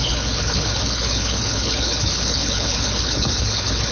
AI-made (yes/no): yes